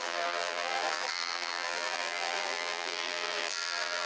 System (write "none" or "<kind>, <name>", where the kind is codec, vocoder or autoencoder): vocoder, BigVGAN v2